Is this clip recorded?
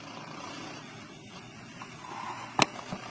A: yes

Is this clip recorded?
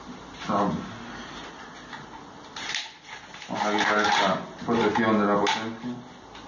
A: yes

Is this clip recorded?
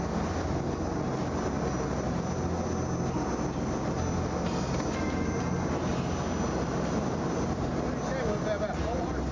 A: yes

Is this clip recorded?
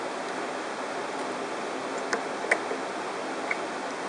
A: yes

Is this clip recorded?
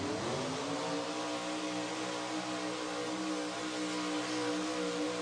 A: yes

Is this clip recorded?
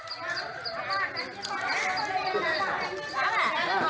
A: yes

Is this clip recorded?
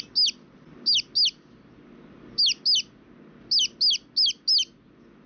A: yes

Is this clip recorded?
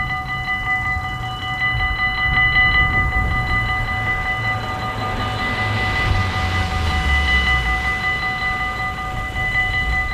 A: yes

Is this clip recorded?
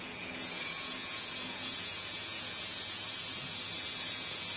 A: no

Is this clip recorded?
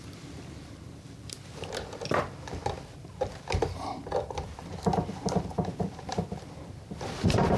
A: no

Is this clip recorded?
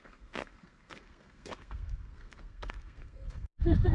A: no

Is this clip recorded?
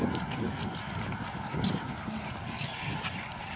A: yes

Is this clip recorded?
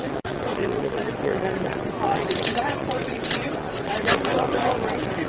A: no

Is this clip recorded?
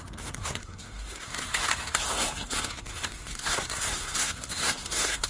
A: no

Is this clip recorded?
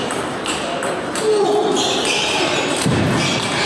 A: no